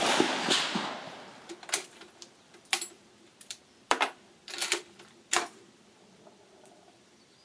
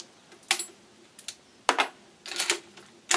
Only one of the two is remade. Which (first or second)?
first